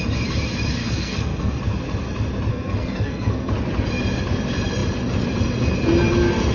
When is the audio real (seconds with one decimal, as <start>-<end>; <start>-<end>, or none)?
0.0-0.8; 1.6-2.5; 3.5-6.5